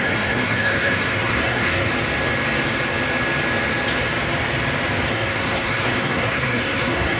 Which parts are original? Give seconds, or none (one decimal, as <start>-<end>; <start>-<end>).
1.9-5.1